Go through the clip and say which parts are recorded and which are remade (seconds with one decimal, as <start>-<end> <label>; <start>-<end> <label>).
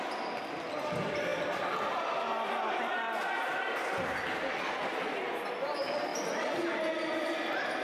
0.0-7.8 recorded